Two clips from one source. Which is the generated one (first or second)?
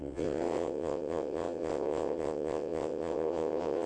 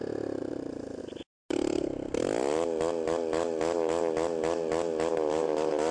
first